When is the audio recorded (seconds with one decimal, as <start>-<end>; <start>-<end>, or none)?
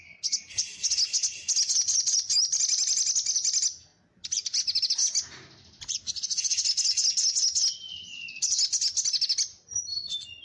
0.0-10.4